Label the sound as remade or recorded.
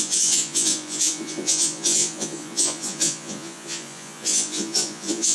remade